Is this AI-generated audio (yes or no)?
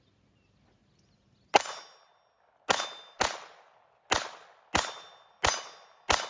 no